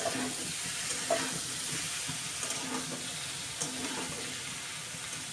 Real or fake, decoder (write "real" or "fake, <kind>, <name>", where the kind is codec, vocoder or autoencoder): real